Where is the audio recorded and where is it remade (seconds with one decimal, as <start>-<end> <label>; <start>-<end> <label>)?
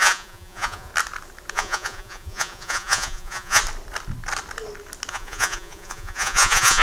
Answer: 0.0-0.9 remade; 0.9-1.5 recorded; 1.5-3.6 remade; 3.6-5.1 recorded; 5.1-6.8 remade